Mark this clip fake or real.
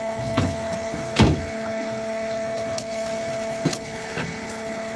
fake